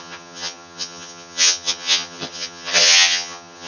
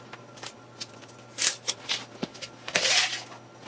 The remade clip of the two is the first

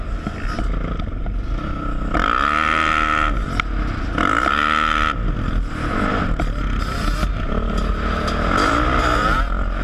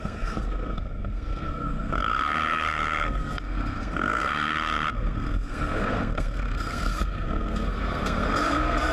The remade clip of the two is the second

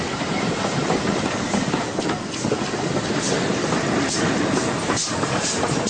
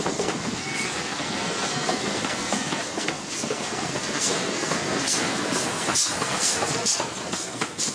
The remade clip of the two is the second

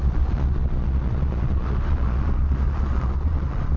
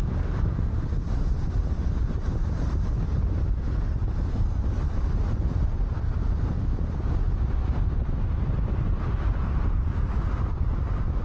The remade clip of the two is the first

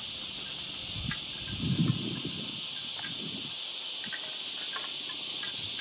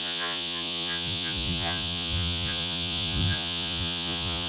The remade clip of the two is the second